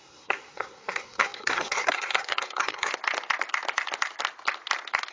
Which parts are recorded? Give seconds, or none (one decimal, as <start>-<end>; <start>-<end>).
2.9-5.1